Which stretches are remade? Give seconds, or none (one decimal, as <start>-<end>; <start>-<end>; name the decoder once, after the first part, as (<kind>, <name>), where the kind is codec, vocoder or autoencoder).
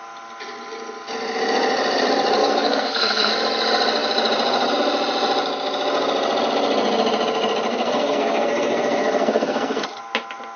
2.4-3.3 (codec, SNAC); 7.7-10.0